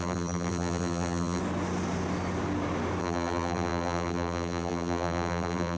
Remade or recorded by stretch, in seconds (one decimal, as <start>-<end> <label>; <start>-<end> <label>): 0.0-1.4 remade; 1.4-3.0 recorded; 3.0-5.8 remade